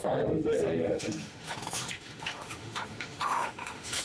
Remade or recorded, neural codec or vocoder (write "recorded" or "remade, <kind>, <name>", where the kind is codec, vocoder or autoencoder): remade, autoencoder, DAC-VAE